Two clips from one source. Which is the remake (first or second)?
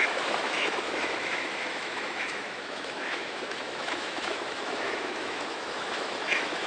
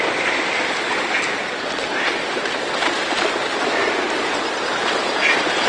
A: first